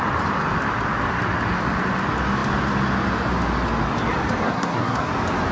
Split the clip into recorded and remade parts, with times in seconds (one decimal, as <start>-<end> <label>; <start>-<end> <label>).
0.0-4.4 recorded; 4.4-5.1 remade; 5.1-5.5 recorded